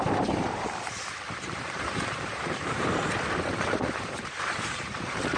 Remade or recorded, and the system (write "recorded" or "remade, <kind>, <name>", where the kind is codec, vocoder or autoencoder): remade, vocoder, BigVGAN v2